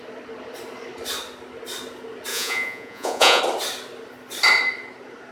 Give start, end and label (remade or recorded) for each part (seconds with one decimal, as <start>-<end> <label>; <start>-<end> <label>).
0.0-2.3 recorded; 2.3-3.4 remade; 3.4-5.3 recorded